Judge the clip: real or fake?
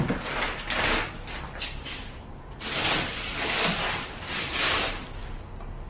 real